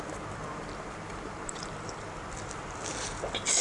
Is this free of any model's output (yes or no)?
no